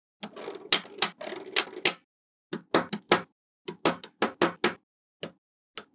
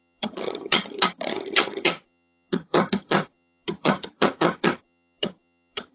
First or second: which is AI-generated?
second